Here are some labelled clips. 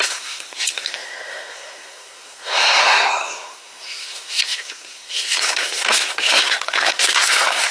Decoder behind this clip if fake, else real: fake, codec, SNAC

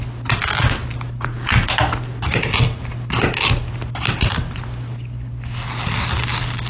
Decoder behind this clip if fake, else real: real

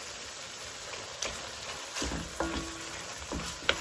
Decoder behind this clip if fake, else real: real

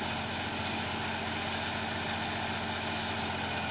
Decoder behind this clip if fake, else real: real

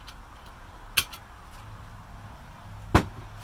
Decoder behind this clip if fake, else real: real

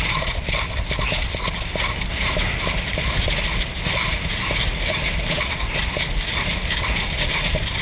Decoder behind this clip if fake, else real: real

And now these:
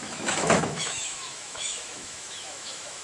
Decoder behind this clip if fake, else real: fake, autoencoder, DAC-VAE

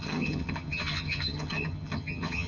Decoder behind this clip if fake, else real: fake, vocoder, HiFi-GAN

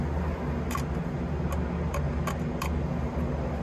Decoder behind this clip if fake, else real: real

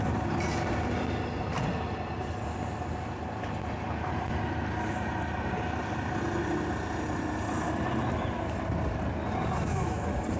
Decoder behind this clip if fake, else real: real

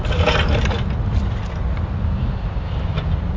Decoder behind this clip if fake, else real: real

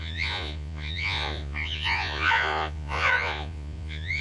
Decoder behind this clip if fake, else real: fake, vocoder, Vocos